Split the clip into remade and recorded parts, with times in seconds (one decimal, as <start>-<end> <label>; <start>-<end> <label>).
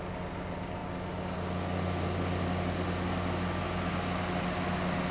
0.0-5.1 recorded